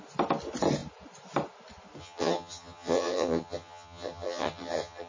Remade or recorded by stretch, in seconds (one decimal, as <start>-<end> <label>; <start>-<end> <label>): 0.0-2.0 recorded; 2.0-5.1 remade